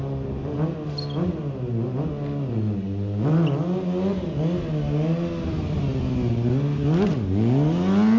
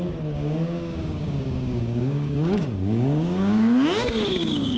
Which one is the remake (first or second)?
second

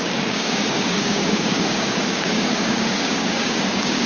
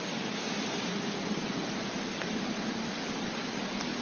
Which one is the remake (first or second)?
first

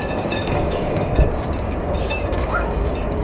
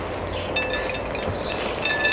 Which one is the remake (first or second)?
first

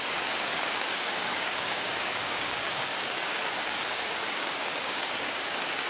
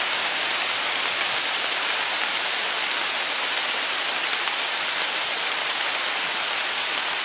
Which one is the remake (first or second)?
first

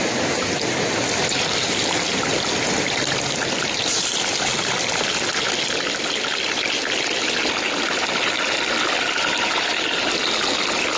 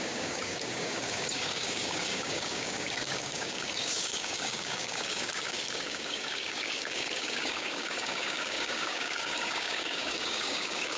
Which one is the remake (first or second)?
second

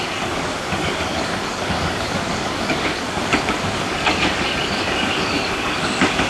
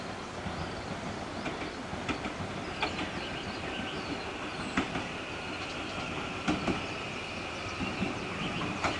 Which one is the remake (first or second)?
first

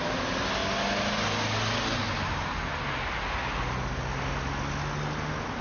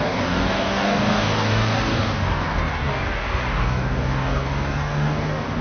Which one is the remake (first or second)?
second